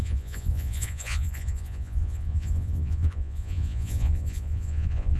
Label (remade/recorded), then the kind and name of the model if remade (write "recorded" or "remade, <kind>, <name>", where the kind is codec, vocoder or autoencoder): remade, vocoder, Vocos